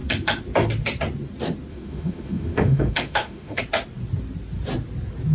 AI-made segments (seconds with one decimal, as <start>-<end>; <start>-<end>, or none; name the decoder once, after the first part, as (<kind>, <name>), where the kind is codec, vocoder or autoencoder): 1.7-3.6 (autoencoder, DAC-VAE)